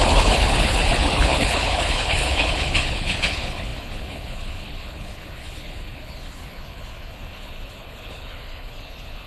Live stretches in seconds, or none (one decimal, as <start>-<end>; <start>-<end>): none